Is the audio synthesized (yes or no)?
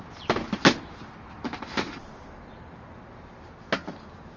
no